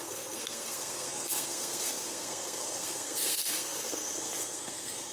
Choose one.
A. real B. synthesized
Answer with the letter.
B